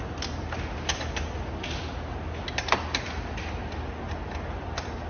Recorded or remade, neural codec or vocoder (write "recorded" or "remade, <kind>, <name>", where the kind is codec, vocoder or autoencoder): recorded